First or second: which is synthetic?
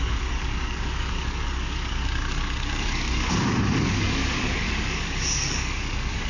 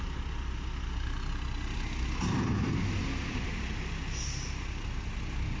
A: first